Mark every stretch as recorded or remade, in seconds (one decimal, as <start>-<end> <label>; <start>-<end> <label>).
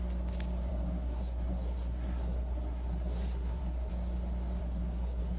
0.0-0.7 recorded; 0.7-3.9 remade; 3.9-4.6 recorded; 4.6-5.4 remade